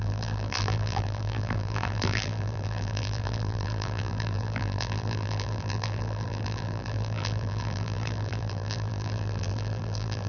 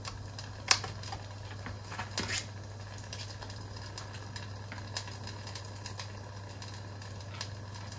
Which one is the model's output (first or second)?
first